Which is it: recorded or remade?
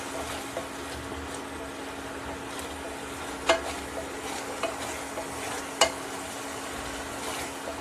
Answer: recorded